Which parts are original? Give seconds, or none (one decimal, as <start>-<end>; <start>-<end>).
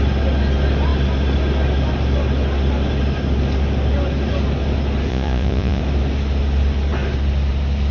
0.0-5.1; 5.8-7.9